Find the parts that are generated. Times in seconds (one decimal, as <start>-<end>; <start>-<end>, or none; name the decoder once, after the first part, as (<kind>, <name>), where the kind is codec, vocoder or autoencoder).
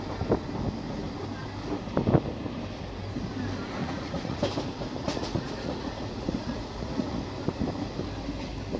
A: 3.8-4.4 (vocoder, Vocos); 5.0-7.2